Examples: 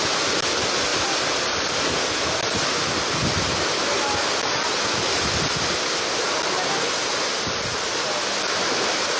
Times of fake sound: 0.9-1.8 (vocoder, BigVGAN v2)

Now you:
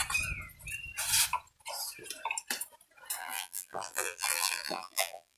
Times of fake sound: 3.2-5.4 (vocoder, BigVGAN v2)

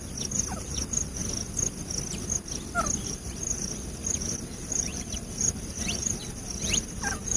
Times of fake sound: 0.0-1.2 (vocoder, BigVGAN v2); 3.1-7.4

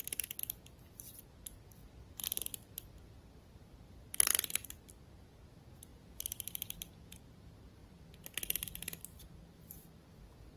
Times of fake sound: 0.0-1.8 (vocoder, BigVGAN v2); 3.2-5.9; 7.2-7.8; 9.2-10.6

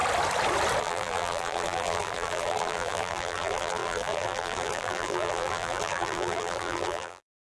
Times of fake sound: 0.8-7.6 (vocoder, BigVGAN v2)

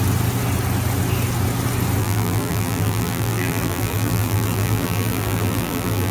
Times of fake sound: 2.0-6.1 (vocoder, BigVGAN v2)

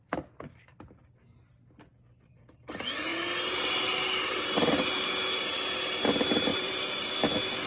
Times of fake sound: 6.5-7.1 (vocoder, BigVGAN v2)